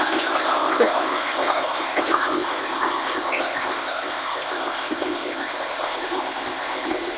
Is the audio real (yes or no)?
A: no